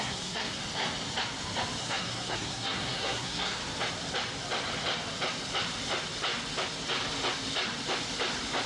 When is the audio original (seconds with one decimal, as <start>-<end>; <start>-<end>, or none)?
0.6-1.8; 3.6-8.7